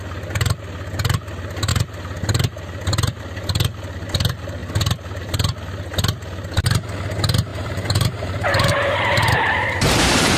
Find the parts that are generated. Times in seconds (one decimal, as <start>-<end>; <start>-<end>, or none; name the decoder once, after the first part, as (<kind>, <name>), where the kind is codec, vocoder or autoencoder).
7.5-10.4 (vocoder, BigVGAN v2)